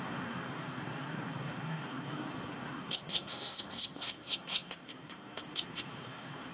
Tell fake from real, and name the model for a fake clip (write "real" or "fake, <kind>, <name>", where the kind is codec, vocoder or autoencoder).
fake, codec, SNAC